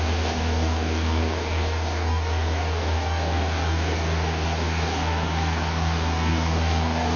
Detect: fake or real fake